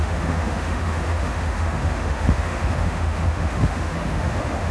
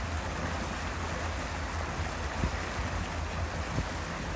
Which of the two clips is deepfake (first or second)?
first